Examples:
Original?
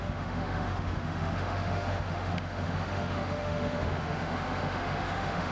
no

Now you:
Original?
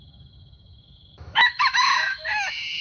no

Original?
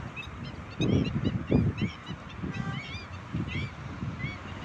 yes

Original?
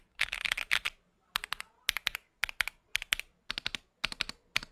yes